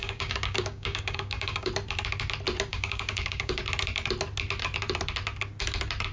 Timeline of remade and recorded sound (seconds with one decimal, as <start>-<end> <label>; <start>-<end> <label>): 0.0-1.7 remade; 1.7-2.7 recorded; 2.7-3.6 remade; 3.6-6.1 recorded